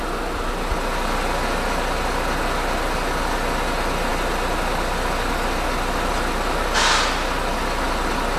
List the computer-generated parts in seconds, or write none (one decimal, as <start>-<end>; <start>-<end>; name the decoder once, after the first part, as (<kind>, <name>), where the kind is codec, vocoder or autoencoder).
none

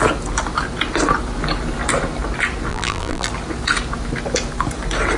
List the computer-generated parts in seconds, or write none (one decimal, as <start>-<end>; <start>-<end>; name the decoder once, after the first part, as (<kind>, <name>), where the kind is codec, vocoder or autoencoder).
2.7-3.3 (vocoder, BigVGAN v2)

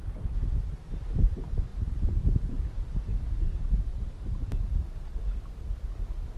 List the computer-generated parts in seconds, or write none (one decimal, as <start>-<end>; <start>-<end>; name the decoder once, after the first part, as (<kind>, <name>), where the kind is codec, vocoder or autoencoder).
1.7-2.9 (vocoder, BigVGAN v2)